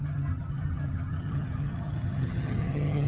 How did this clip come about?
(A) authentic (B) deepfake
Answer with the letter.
B